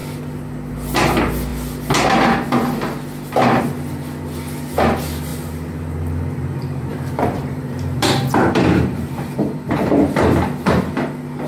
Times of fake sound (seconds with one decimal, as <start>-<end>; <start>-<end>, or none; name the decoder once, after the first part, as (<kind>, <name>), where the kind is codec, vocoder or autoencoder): 5.3-10.0 (vocoder, BigVGAN v2)